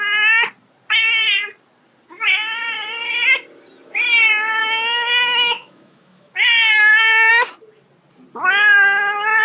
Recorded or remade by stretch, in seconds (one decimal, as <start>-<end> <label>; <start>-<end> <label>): 0.0-4.6 recorded; 4.6-7.3 remade; 7.3-9.4 recorded